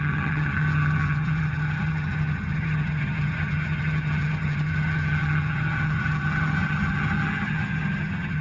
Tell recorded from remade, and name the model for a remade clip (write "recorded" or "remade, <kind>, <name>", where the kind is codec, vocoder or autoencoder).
remade, vocoder, HiFi-GAN